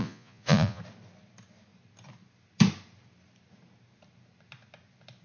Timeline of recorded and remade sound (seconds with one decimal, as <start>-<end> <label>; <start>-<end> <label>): 0.0-0.8 remade; 0.8-5.2 recorded